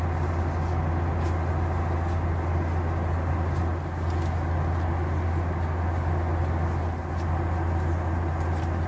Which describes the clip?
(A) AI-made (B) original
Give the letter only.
B